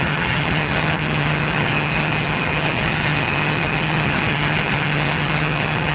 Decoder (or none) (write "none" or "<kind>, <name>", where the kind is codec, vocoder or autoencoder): vocoder, HiFi-GAN